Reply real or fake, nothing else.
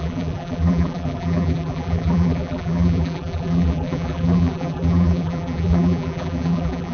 fake